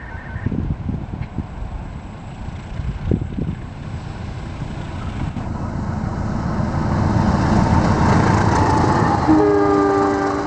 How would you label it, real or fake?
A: real